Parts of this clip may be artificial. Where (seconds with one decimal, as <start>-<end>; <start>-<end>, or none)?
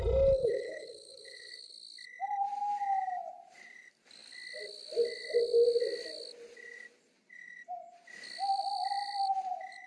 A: 0.4-1.7